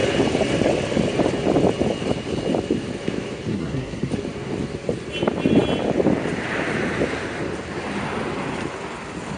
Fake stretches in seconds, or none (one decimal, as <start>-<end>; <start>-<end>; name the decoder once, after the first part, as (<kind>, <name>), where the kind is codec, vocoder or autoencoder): 3.5-4.1 (codec, SNAC)